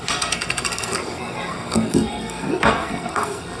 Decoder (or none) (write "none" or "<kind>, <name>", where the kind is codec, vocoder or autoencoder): codec, SNAC